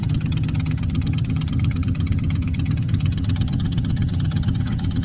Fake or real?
fake